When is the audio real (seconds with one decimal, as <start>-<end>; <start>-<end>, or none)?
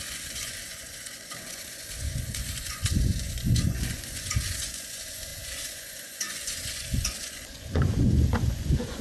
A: none